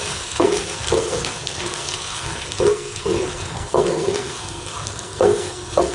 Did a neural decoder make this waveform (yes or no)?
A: yes